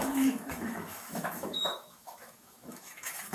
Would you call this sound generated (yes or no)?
yes